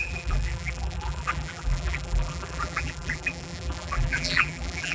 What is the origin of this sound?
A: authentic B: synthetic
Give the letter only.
B